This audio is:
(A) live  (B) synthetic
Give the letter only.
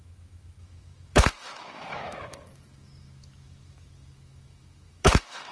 B